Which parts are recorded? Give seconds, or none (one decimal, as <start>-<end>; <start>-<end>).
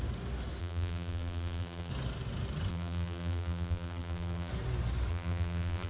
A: 0.0-0.6; 1.9-2.7; 4.5-5.1